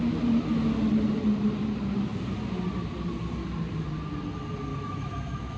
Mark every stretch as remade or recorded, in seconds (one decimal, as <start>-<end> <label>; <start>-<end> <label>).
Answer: 0.0-4.7 recorded; 4.7-5.6 remade